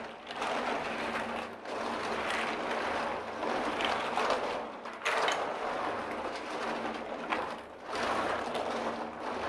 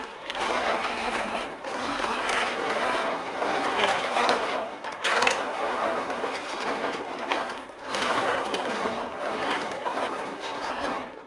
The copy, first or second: second